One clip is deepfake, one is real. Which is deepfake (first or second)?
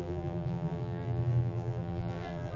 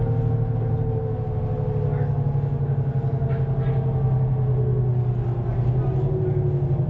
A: first